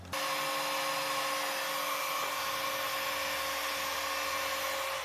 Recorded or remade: recorded